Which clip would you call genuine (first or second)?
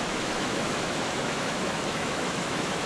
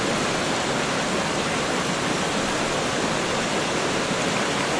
second